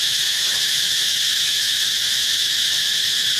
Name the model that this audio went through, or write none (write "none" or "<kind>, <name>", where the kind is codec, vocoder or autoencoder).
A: autoencoder, DAC-VAE